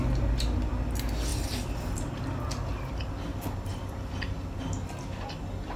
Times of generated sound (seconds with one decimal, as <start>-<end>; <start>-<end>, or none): 1.3-2.5

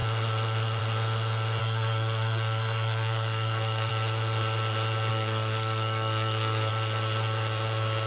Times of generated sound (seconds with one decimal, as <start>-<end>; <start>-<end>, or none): 1.6-3.9; 5.1-6.7

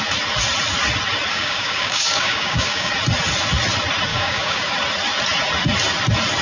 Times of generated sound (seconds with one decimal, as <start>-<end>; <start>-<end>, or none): 1.3-2.9; 4.1-4.7

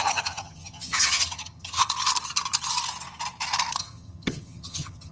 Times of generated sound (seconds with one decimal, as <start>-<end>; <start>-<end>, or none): 0.0-1.8; 3.8-5.1

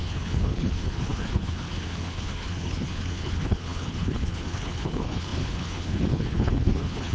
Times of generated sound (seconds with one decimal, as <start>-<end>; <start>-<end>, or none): 0.0-7.1

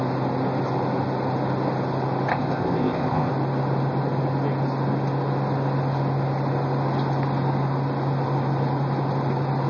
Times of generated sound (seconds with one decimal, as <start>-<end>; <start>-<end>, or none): 2.3-3.3